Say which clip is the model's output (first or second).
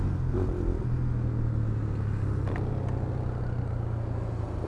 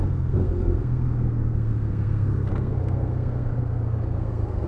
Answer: second